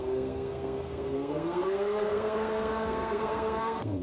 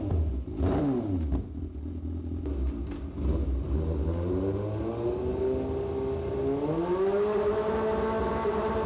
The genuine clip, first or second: second